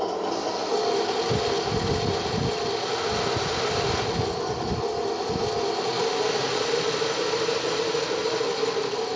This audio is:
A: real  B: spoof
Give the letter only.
A